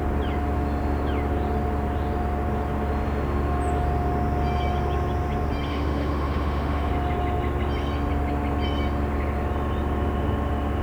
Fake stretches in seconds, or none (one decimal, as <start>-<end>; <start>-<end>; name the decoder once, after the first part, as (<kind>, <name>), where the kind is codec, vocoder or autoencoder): 5.7-6.9 (autoencoder, DAC-VAE)

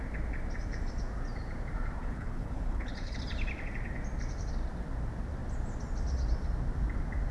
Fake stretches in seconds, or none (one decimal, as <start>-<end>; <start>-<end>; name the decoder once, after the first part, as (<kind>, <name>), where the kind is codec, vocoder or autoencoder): 2.0-3.2 (codec, HILCodec)

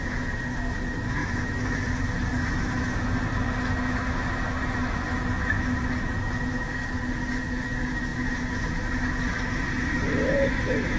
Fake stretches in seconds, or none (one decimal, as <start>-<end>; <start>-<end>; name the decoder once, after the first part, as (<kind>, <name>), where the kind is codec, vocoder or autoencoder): 0.0-6.8 (autoencoder, DAC-VAE); 7.4-11.0